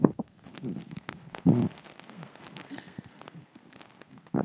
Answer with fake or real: fake